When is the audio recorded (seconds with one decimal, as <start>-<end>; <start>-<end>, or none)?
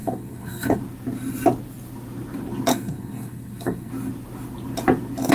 0.8-2.7; 3.9-5.3